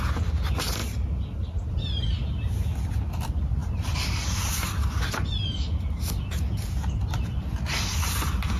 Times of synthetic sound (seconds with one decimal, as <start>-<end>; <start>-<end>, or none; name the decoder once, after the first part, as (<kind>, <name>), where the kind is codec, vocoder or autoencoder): none